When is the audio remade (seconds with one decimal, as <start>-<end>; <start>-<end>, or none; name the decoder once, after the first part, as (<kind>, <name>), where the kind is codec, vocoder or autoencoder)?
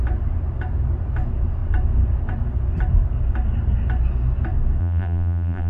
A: 4.8-5.7 (vocoder, BigVGAN v2)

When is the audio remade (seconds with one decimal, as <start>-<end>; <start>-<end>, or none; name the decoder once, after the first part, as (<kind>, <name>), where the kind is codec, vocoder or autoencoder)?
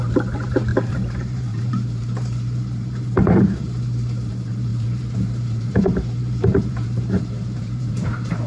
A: 0.0-8.5 (vocoder, BigVGAN v2)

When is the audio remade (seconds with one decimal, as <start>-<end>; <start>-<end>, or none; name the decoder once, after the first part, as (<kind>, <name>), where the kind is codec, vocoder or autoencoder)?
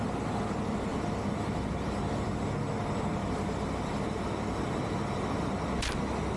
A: 0.9-2.3 (vocoder, BigVGAN v2); 3.2-5.5